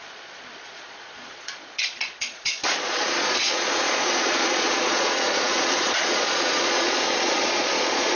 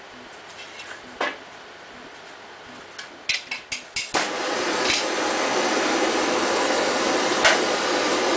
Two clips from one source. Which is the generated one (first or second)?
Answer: first